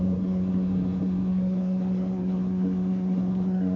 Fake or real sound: fake